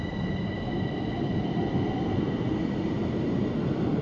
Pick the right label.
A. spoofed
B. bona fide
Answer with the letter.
B